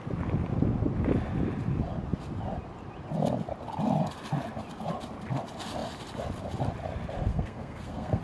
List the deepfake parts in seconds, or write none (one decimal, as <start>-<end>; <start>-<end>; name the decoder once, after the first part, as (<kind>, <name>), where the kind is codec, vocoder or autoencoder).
7.3-8.2 (codec, SNAC)